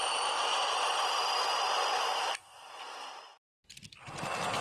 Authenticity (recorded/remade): recorded